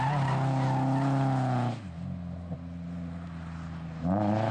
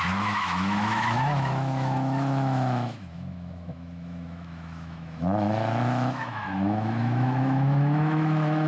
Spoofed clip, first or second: second